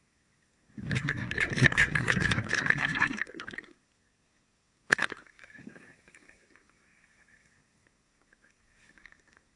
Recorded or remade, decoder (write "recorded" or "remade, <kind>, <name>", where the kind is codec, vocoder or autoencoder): remade, codec, SNAC